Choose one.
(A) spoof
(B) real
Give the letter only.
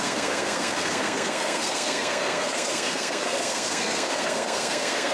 A